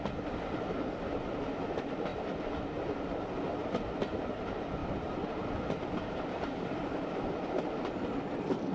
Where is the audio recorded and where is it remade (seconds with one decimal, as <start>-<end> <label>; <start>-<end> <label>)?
0.0-2.1 recorded; 2.1-3.2 remade; 3.2-4.8 recorded; 4.8-6.9 remade; 6.9-8.7 recorded